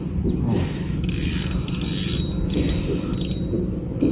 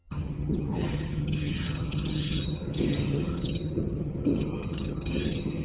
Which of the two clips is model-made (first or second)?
second